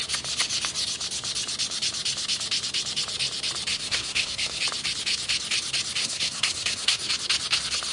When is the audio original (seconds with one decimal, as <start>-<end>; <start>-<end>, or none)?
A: 0.0-3.7; 4.6-6.0; 7.1-7.9

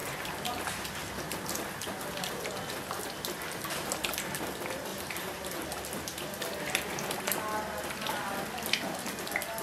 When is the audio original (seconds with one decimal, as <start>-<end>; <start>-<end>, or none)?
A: 0.0-4.9; 5.8-9.6

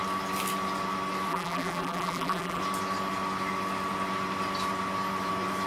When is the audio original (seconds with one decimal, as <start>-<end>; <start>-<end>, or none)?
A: 0.0-1.3; 2.6-5.7